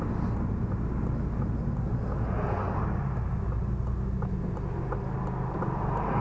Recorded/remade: recorded